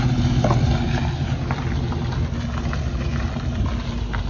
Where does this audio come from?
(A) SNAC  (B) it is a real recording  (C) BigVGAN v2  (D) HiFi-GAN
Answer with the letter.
B